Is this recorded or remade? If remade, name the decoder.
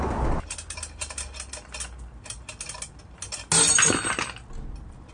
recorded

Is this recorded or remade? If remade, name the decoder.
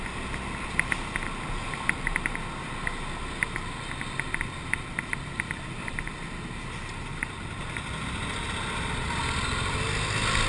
recorded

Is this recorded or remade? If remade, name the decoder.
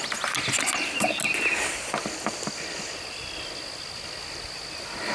recorded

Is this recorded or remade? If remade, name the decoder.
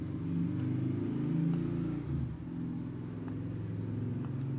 recorded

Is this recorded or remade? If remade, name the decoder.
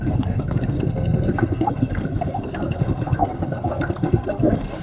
remade, codec, SNAC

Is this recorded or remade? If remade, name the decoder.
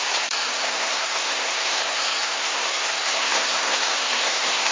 remade, codec, SNAC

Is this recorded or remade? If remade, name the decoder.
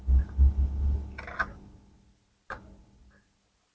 recorded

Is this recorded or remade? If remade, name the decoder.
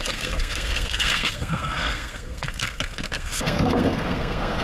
remade, codec, SNAC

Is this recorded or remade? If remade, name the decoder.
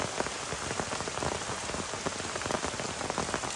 recorded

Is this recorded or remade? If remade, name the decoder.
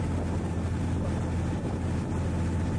recorded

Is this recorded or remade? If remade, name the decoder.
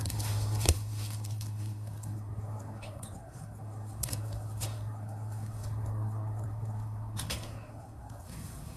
remade, codec, SNAC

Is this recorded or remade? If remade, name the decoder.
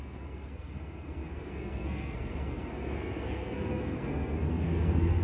remade, codec, SNAC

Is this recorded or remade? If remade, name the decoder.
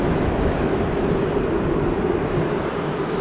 recorded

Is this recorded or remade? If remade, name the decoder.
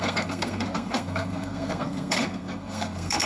remade, codec, SNAC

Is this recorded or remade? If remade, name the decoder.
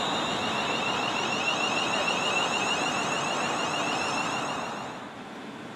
recorded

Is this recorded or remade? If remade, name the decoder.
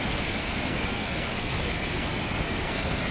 remade, codec, SNAC